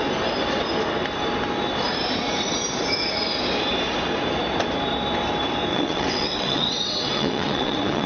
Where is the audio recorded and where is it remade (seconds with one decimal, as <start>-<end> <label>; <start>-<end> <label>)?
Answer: 0.0-5.7 recorded; 5.7-8.1 remade